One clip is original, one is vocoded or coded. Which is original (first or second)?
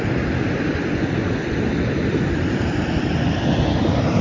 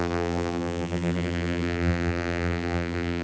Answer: first